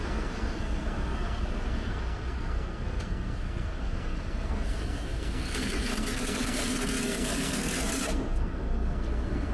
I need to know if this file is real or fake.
fake